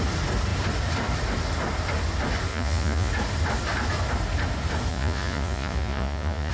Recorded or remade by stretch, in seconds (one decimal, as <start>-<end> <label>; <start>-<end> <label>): 0.0-2.5 recorded; 2.5-3.1 remade; 3.1-4.9 recorded; 4.9-6.5 remade